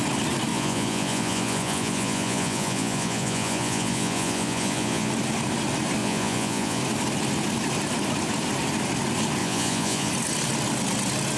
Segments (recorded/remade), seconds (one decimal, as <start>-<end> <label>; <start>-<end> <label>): 0.0-0.5 recorded; 0.5-5.1 remade; 5.1-6.0 recorded; 6.0-6.8 remade; 6.8-9.4 recorded; 9.4-10.1 remade; 10.1-11.4 recorded